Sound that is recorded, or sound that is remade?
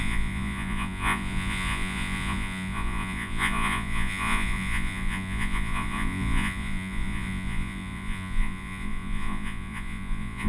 remade